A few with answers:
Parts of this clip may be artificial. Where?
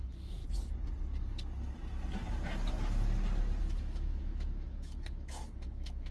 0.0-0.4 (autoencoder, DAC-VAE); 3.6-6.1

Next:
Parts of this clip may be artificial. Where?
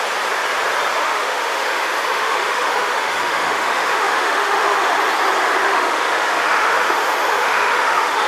1.0-5.0 (autoencoder, DAC-VAE); 5.6-8.3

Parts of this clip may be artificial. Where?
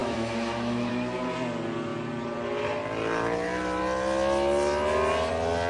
0.0-0.9 (autoencoder, DAC-VAE)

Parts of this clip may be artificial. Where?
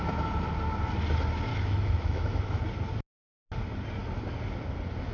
1.5-2.6 (autoencoder, DAC-VAE)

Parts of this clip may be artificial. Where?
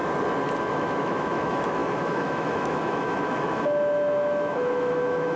0.6-5.4 (autoencoder, DAC-VAE)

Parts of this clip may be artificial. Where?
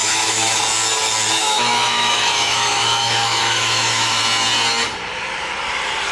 0.0-0.6 (autoencoder, DAC-VAE); 1.4-4.2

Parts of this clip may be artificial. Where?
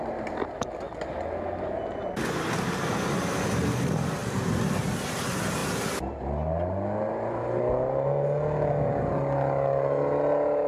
none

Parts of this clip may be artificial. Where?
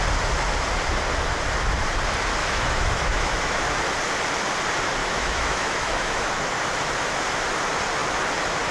2.4-3.8 (autoencoder, DAC-VAE); 5.0-6.3